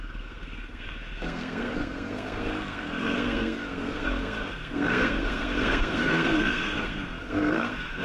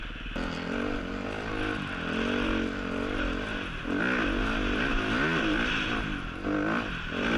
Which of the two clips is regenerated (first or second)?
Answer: first